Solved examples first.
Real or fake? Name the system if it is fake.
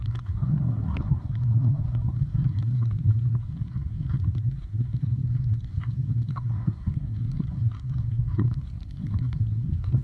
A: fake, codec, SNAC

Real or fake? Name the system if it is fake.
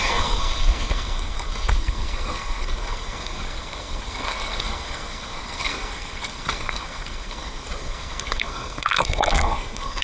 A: fake, codec, SNAC